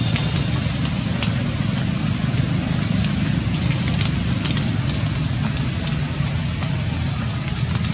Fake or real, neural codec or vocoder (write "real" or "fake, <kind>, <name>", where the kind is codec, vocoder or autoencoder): real